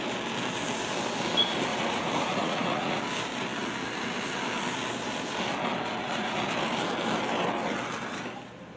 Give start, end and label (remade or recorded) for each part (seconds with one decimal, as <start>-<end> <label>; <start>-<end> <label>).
0.0-1.7 recorded; 1.7-3.0 remade; 3.0-6.0 recorded; 6.0-6.5 remade; 6.5-8.8 recorded